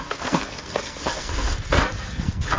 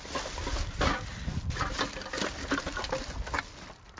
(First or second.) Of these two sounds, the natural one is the second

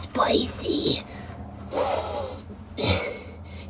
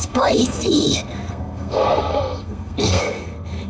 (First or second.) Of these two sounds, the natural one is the first